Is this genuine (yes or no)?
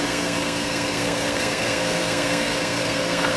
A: no